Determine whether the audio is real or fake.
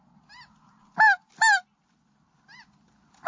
real